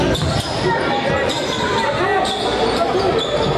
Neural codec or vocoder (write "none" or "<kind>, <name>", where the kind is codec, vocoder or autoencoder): none